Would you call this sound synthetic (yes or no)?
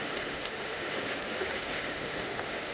yes